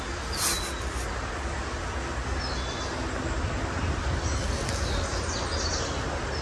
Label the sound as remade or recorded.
recorded